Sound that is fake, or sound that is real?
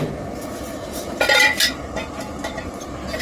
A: fake